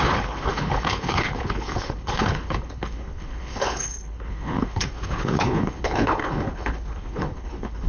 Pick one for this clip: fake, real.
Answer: fake